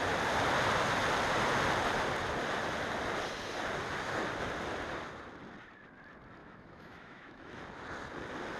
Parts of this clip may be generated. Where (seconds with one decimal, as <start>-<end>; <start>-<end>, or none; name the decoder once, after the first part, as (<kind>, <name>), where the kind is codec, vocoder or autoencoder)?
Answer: 6.4-7.6 (autoencoder, DAC-VAE)